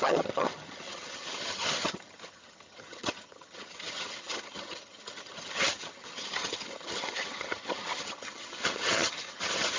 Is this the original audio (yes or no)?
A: no